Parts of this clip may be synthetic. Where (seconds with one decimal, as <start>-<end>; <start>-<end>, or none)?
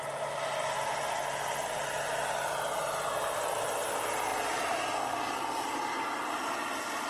none